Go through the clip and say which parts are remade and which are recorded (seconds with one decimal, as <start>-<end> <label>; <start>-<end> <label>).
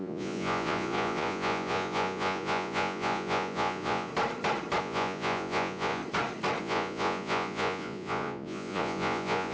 0.0-4.1 remade; 4.1-4.8 recorded; 4.8-6.0 remade; 6.0-6.6 recorded; 6.6-9.5 remade